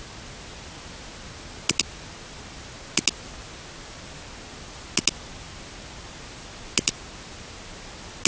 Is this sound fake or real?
real